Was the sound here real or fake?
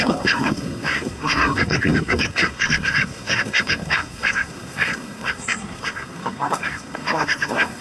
fake